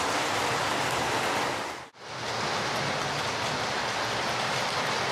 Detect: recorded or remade remade